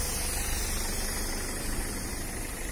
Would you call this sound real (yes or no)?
yes